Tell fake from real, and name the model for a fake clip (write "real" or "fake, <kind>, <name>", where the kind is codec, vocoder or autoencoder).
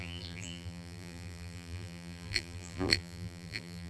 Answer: fake, vocoder, BigVGAN v2